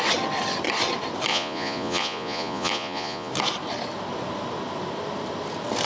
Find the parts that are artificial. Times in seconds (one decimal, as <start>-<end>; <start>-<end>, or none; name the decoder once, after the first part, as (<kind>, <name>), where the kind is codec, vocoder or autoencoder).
1.3-3.3 (vocoder, Vocos)